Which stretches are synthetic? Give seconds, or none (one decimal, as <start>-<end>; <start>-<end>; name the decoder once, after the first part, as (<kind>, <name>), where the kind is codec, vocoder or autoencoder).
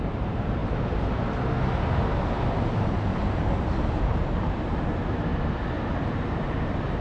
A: 0.0-0.6 (vocoder, BigVGAN v2); 2.2-5.3; 6.1-7.0